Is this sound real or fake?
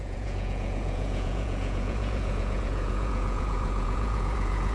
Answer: fake